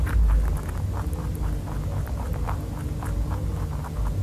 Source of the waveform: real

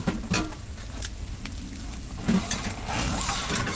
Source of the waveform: real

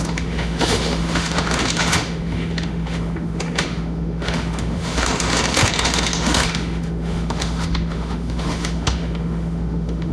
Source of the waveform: fake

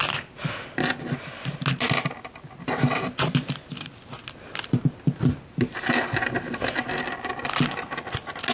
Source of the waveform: real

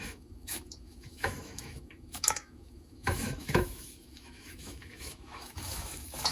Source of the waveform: fake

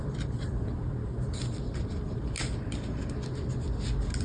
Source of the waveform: real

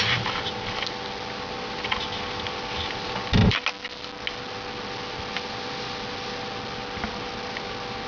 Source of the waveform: real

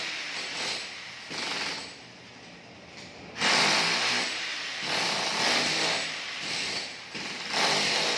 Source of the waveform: real